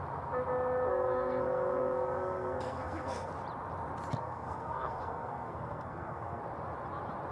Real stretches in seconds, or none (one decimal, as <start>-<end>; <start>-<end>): 0.0-0.9; 3.3-4.2; 6.4-7.3